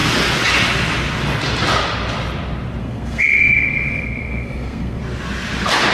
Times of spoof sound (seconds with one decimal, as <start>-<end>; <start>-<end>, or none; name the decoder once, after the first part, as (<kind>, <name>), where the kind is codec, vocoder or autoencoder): 2.8-5.0 (codec, SNAC)